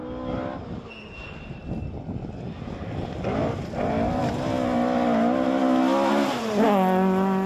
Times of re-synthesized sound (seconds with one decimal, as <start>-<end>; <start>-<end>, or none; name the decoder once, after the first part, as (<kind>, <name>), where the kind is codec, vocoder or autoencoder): none